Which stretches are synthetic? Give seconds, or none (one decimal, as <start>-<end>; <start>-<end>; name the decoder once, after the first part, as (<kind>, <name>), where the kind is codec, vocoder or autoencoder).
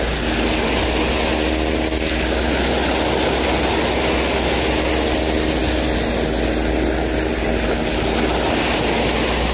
none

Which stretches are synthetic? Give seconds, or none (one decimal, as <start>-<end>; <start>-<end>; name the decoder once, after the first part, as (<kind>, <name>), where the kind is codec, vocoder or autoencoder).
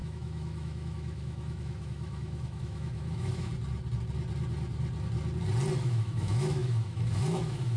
0.0-3.5 (autoencoder, DAC-VAE); 5.8-7.8